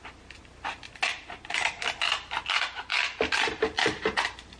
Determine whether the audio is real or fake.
real